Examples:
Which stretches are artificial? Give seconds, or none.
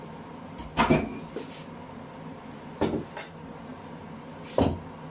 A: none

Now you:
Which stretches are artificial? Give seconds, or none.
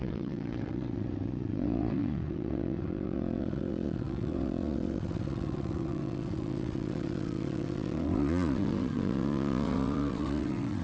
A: 0.0-10.8 (vocoder, WaveNeXt)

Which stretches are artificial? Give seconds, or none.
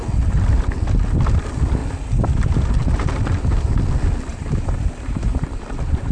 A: 4.3-6.1 (vocoder, BigVGAN v2)